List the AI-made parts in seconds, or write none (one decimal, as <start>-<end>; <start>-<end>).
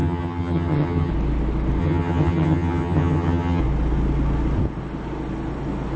0.0-1.1; 1.8-3.6